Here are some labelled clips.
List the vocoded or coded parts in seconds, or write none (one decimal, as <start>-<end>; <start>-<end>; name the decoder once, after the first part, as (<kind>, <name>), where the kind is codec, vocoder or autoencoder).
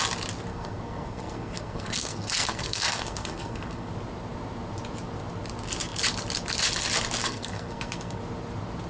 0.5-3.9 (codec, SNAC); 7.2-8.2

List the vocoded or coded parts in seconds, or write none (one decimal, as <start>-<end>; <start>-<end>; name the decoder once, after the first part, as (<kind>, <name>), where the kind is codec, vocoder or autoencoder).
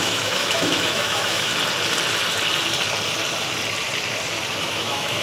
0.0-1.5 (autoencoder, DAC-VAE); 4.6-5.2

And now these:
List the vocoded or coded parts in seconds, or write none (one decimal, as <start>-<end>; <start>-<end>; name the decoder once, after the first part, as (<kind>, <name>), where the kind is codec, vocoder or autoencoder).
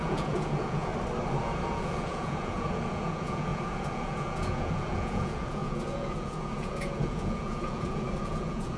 0.0-0.9 (vocoder, Vocos); 1.4-8.8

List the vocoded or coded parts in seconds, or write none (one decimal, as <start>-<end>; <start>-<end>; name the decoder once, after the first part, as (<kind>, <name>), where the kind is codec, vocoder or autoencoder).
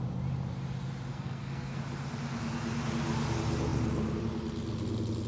1.1-1.8 (codec, SNAC)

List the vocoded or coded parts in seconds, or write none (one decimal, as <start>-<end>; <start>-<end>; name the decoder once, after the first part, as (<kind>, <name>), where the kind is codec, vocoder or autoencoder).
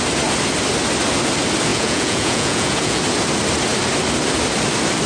1.7-3.0 (vocoder, Vocos)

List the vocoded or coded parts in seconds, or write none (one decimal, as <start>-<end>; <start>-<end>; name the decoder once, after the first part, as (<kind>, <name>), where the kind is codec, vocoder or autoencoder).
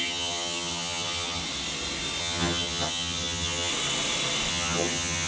0.0-1.4 (vocoder, HiFi-GAN); 2.2-3.7; 4.5-5.3